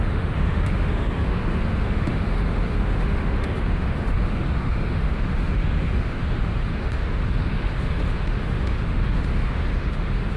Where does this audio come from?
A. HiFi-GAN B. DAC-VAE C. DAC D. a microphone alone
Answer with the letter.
B